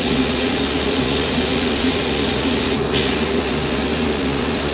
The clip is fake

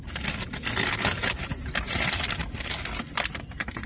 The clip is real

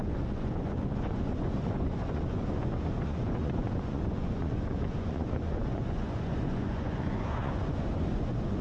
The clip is fake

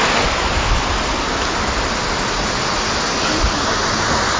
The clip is real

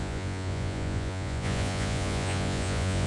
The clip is fake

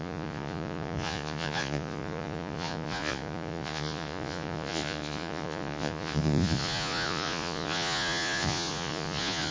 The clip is fake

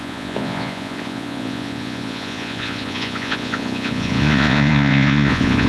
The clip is fake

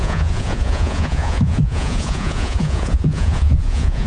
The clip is fake